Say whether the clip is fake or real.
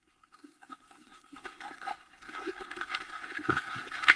fake